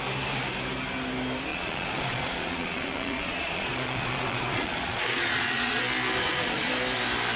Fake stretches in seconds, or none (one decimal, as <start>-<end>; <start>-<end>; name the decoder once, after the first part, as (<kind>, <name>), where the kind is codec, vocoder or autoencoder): 1.5-5.8 (vocoder, Vocos); 6.2-6.7